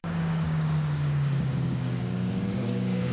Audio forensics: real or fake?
fake